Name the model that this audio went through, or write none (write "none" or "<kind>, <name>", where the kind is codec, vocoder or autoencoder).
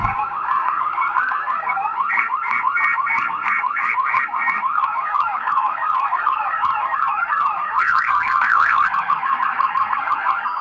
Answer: codec, SNAC